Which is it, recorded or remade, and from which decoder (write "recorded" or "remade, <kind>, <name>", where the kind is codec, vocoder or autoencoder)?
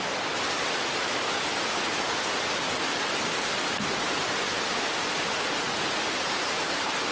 recorded